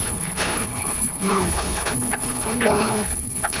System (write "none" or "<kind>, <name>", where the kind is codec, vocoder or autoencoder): codec, HILCodec